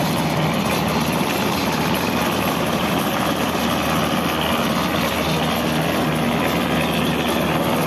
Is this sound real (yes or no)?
yes